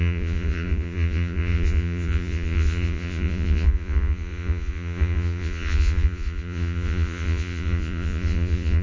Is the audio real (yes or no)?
no